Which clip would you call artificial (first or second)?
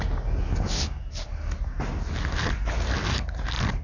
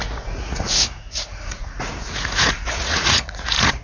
second